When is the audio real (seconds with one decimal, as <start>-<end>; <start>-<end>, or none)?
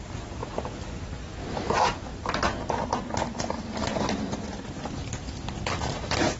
0.4-1.7; 2.1-3.4